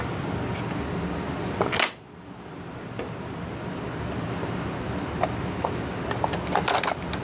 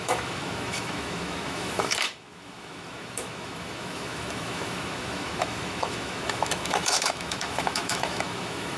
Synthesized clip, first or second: second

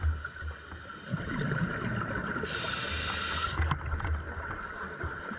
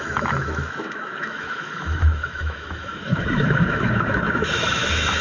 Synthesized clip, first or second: second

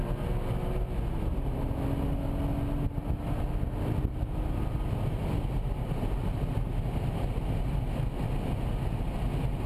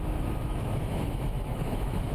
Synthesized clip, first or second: second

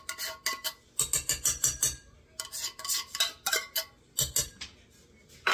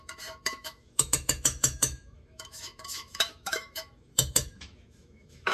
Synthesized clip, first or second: second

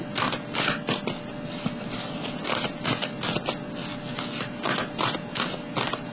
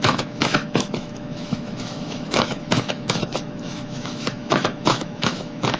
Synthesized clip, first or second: second